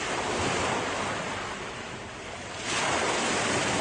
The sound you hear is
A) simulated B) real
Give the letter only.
B